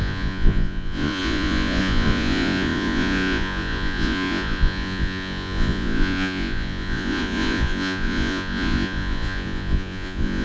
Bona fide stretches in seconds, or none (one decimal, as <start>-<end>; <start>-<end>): none